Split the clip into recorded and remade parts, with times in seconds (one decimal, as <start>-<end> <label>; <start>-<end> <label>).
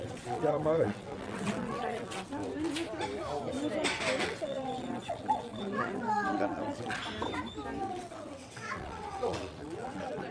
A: 0.0-2.4 remade; 2.4-4.2 recorded; 4.2-7.0 remade; 7.0-7.8 recorded; 7.8-10.3 remade